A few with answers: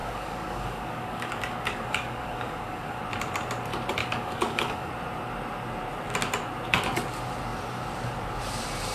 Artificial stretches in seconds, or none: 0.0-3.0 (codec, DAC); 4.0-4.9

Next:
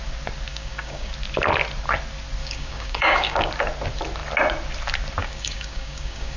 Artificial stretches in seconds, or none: 0.5-1.1 (codec, DAC); 2.4-3.5; 5.2-6.4

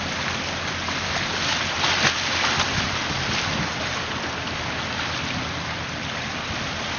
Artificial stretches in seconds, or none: none

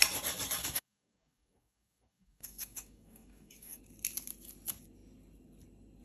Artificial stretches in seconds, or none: 0.6-3.8 (codec, DAC)

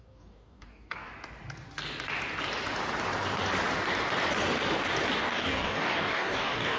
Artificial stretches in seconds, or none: 0.0-1.1 (codec, DAC); 5.2-6.8

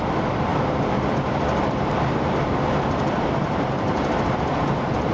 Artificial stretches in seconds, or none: none

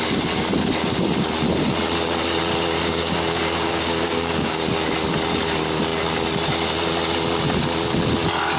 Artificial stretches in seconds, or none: 2.8-4.6 (codec, DAC)

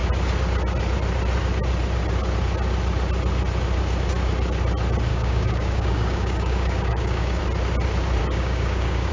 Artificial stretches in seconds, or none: 5.1-7.4 (codec, DAC); 8.2-9.1